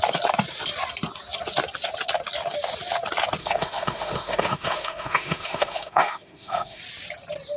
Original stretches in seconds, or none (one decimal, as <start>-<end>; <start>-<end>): 0.0-3.4; 6.8-7.6